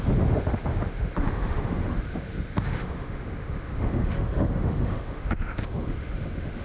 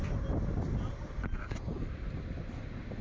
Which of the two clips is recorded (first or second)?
second